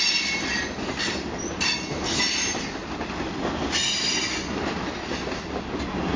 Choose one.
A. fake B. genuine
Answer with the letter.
B